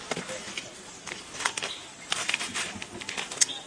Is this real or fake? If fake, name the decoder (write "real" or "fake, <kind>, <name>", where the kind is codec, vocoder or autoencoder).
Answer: real